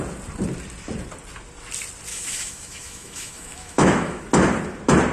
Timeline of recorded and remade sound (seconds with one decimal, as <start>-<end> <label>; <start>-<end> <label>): 0.0-2.1 recorded; 2.1-4.2 remade; 4.2-5.1 recorded